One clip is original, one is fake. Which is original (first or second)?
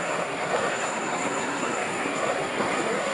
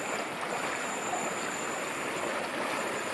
second